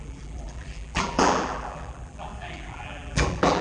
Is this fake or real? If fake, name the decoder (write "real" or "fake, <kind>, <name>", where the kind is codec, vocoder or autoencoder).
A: fake, vocoder, BigVGAN v2